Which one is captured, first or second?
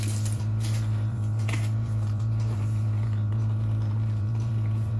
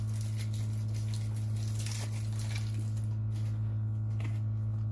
second